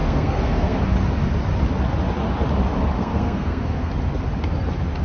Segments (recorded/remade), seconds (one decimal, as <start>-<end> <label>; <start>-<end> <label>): 0.0-0.8 remade; 0.8-3.0 recorded; 3.0-3.9 remade; 3.9-5.0 recorded